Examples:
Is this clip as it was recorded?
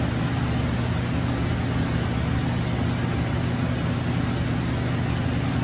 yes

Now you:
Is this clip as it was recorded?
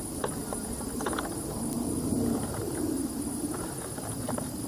no